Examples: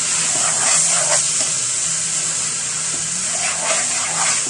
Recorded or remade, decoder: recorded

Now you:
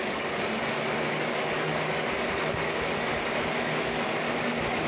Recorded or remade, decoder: remade, codec, DAC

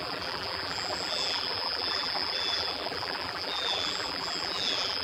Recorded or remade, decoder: remade, vocoder, BigVGAN v2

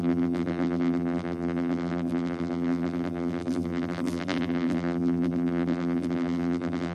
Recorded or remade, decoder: remade, vocoder, BigVGAN v2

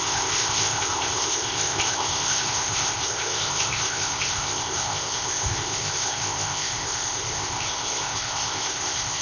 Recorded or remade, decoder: remade, codec, ZipCodec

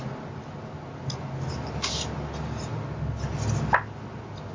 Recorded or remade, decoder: recorded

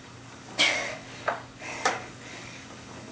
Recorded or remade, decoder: remade, codec, DAC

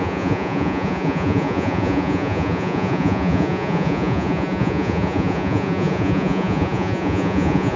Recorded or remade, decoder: remade, vocoder, Vocos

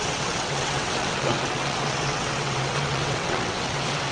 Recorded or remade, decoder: remade, vocoder, WaveNeXt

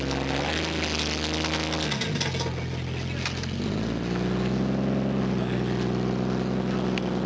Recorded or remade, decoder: recorded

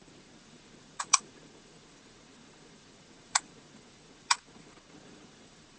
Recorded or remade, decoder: remade, vocoder, Vocos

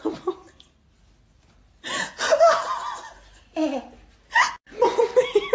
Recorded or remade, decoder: recorded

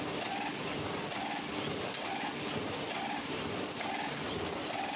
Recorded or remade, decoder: recorded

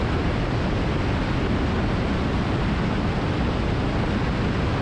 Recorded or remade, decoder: recorded